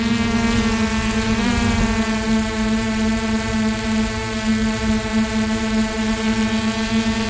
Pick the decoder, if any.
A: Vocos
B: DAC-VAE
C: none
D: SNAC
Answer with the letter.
C